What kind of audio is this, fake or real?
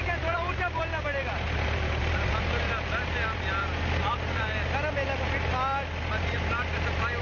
real